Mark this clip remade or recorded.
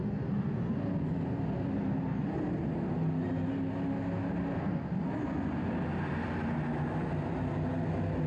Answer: recorded